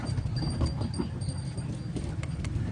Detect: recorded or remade recorded